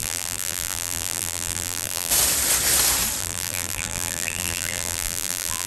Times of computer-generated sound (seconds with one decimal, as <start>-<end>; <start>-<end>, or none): 0.0-2.1; 3.2-5.7